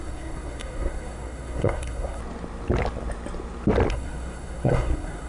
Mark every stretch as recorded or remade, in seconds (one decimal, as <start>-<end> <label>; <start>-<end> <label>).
0.0-2.2 remade; 2.2-3.9 recorded; 3.9-5.3 remade